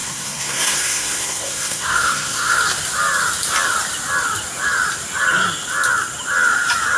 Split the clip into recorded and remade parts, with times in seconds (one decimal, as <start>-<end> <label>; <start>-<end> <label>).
0.0-2.6 remade; 2.6-7.0 recorded